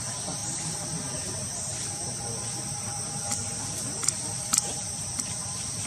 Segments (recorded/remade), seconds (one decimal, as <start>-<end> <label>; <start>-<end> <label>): 0.0-5.9 recorded

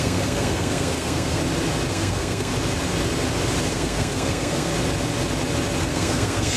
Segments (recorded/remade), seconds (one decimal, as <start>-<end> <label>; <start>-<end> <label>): 0.0-1.4 remade; 1.4-1.9 recorded; 1.9-2.5 remade; 2.5-3.7 recorded; 3.7-4.7 remade; 4.7-5.8 recorded; 5.8-6.6 remade

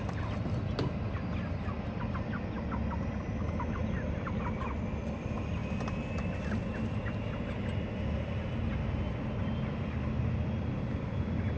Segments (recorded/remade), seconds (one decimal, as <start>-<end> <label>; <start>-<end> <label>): 0.0-11.6 recorded

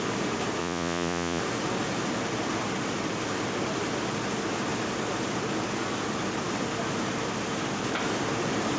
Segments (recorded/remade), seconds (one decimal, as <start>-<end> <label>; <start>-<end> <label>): 0.0-0.6 recorded; 0.6-1.4 remade; 1.4-8.8 recorded

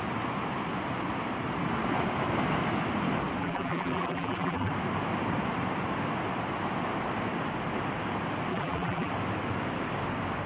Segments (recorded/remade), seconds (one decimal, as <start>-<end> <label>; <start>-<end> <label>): 0.0-3.4 recorded; 3.4-4.7 remade; 4.7-8.5 recorded; 8.5-9.1 remade; 9.1-10.5 recorded

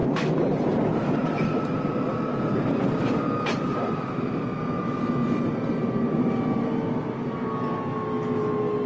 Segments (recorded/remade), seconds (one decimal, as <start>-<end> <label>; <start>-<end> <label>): 0.0-0.7 remade; 0.7-1.2 recorded; 1.2-5.0 remade; 5.0-8.9 recorded

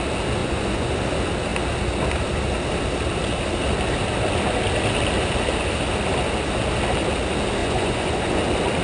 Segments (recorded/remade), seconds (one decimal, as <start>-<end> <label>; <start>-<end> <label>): 0.0-0.4 recorded; 0.4-0.9 remade; 0.9-7.6 recorded; 7.6-8.4 remade; 8.4-8.8 recorded

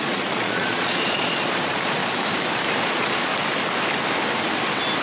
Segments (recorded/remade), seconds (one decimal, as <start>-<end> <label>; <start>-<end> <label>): 0.0-2.0 remade; 2.0-2.8 recorded; 2.8-3.3 remade; 3.3-5.0 recorded